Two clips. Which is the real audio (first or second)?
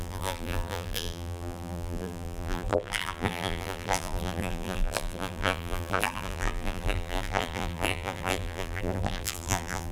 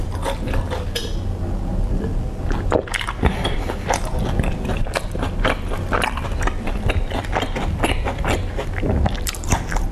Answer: second